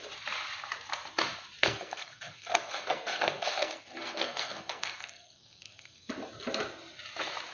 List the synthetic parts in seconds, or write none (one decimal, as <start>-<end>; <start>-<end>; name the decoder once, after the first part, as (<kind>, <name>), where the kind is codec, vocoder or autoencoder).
1.6-6.1 (codec, SNAC)